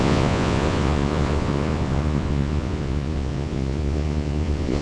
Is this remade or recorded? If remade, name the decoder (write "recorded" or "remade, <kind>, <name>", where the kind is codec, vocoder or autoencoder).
remade, vocoder, Vocos